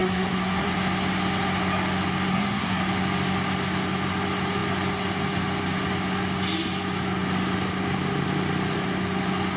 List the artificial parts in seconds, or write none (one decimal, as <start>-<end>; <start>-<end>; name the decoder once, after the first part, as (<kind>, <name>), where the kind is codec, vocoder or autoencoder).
0.0-0.7 (codec, SNAC); 2.3-2.8